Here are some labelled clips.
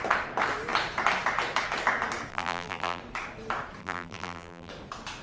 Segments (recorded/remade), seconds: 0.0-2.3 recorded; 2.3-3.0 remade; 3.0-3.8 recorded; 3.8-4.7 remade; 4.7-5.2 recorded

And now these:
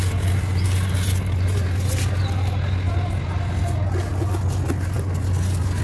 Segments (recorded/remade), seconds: 0.0-5.8 recorded

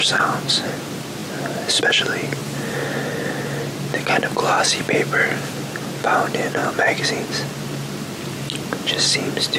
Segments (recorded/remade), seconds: 0.0-1.2 recorded; 1.2-1.8 remade; 1.8-9.6 recorded

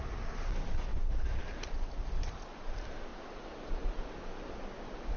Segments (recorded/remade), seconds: 0.0-3.1 recorded; 3.1-4.1 remade; 4.1-5.2 recorded

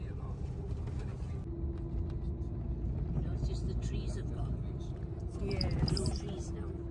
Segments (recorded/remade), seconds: 0.0-1.1 remade; 1.1-4.0 recorded; 4.0-4.4 remade; 4.4-4.9 recorded; 4.9-6.9 remade

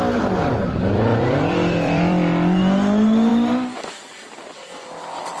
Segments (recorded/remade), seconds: 0.0-0.5 recorded; 0.5-2.6 remade; 2.6-5.4 recorded

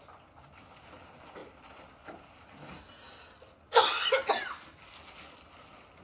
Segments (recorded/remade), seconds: 0.0-6.0 recorded